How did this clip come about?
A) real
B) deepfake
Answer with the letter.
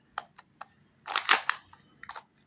A